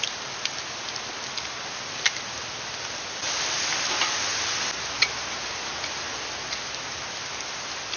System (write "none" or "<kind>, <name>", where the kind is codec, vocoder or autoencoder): none